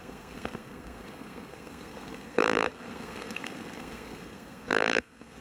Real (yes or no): no